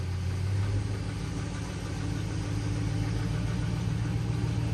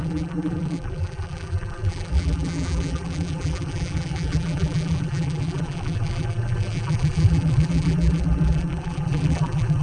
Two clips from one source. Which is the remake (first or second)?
second